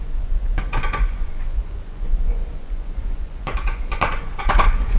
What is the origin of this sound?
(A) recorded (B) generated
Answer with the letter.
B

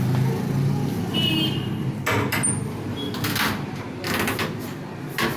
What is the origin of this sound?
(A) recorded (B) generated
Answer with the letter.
A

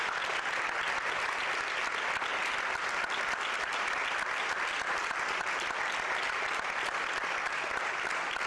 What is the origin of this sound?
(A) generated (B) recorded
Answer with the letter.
B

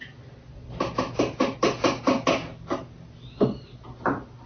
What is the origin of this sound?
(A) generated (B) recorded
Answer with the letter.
B